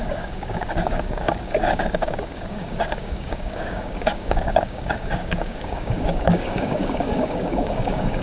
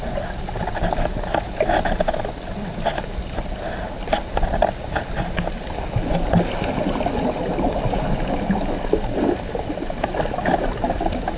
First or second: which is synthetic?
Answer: first